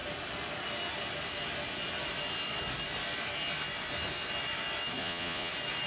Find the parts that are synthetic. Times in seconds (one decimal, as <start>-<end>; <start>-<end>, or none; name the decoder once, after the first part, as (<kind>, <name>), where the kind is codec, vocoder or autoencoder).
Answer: 5.0-5.5 (vocoder, Vocos)